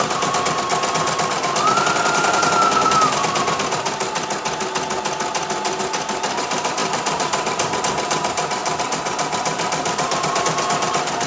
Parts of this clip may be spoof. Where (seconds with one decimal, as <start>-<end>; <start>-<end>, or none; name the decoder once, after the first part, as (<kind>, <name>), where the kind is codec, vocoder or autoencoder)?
0.0-0.7 (vocoder, BigVGAN v2); 5.8-11.3